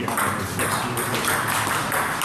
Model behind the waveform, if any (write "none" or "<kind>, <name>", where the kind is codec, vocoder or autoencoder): vocoder, BigVGAN v2